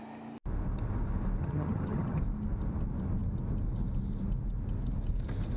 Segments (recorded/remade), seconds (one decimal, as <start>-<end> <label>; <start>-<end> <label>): 0.0-1.4 recorded; 1.4-2.2 remade; 2.2-5.6 recorded